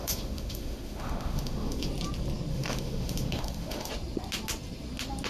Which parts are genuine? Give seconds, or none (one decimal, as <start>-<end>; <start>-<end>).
1.9-2.5; 3.9-5.3